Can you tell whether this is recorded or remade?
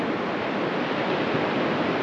recorded